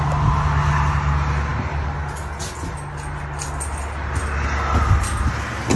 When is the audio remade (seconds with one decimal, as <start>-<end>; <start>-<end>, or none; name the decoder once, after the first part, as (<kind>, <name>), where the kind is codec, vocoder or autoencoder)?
none